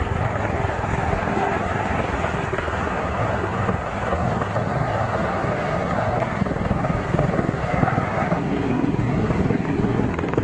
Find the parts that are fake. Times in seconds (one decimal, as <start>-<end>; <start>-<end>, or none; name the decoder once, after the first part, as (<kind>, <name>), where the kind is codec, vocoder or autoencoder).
0.0-10.4 (codec, SNAC)